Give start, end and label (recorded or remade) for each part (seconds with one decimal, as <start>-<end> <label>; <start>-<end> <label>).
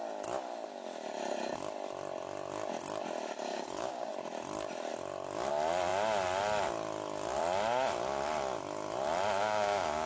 0.0-3.5 recorded; 3.5-4.1 remade; 4.1-9.4 recorded; 9.4-10.1 remade